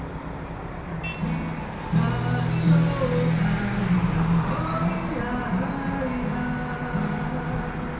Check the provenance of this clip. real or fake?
real